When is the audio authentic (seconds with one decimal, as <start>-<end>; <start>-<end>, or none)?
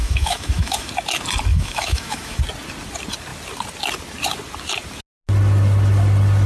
0.9-1.5; 2.4-6.5